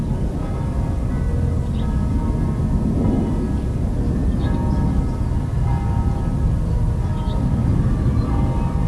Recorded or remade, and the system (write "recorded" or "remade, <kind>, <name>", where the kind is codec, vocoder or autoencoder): recorded